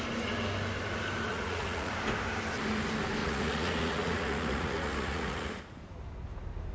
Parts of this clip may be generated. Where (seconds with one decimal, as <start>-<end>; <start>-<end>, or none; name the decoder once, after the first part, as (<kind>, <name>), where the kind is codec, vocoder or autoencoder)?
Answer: 1.3-1.9 (vocoder, Vocos); 3.2-5.6